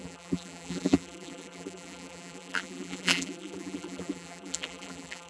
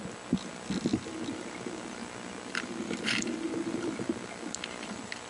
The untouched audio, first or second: second